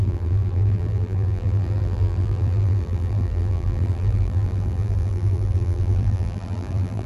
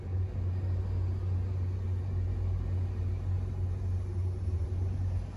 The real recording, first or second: second